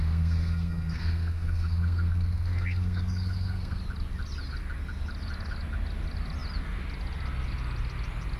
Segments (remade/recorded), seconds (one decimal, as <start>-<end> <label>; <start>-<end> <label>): 0.0-3.8 remade; 3.8-8.4 recorded